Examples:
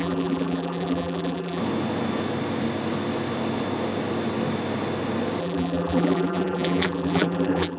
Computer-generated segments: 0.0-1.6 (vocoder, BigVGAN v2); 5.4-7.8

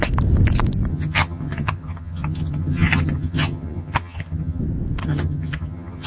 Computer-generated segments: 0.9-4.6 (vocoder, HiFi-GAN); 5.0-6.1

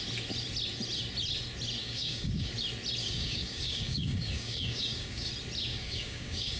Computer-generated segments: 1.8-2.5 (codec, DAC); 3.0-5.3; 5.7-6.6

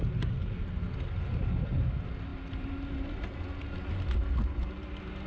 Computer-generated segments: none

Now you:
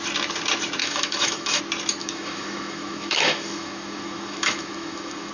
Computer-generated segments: 0.8-1.6 (autoencoder, DAC-VAE); 2.0-5.3

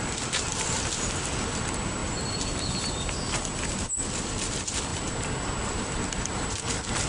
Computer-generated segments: 0.0-2.0 (vocoder, BigVGAN v2); 3.7-4.9; 6.0-7.1

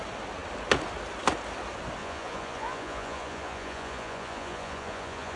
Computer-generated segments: 2.0-5.4 (vocoder, Vocos)

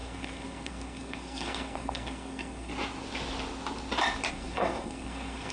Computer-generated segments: 0.0-2.7 (codec, SNAC); 4.3-5.5